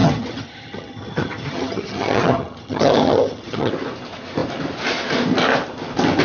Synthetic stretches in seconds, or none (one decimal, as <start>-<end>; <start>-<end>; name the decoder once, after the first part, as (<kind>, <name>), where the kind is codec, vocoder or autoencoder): 0.0-3.7 (vocoder, HiFi-GAN)